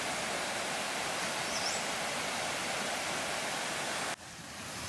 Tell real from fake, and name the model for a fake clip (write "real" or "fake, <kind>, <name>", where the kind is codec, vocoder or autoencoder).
real